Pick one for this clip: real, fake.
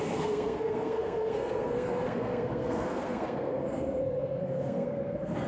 fake